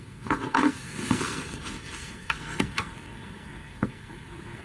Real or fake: fake